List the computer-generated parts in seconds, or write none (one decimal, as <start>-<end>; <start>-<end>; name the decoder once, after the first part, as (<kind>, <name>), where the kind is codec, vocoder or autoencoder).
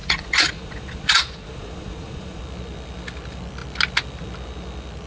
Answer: 0.0-2.4 (vocoder, Vocos)